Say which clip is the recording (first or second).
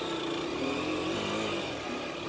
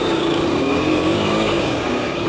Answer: first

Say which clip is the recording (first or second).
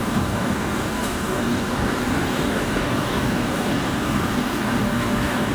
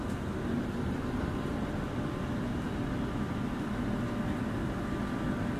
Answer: second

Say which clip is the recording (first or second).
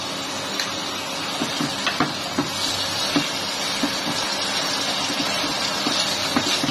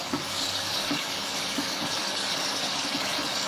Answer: first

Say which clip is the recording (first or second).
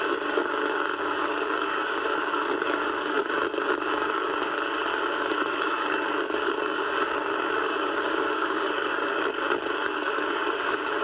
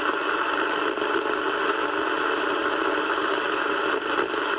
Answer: second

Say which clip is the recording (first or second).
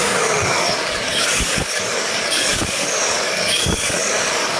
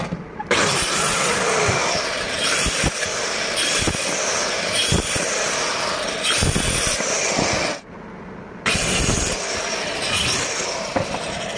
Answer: second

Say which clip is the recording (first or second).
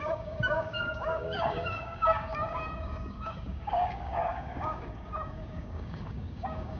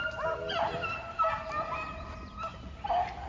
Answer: second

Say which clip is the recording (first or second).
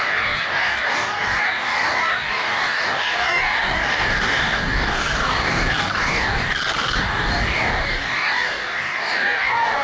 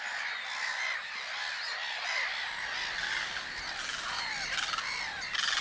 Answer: second